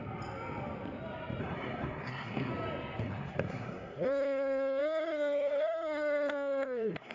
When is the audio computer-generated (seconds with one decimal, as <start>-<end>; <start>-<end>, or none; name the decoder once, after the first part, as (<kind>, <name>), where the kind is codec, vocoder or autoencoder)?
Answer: 1.4-2.5 (codec, SNAC); 3.0-7.1